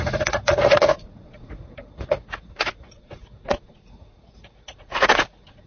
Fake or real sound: fake